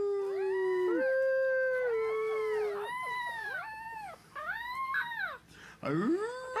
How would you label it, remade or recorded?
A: recorded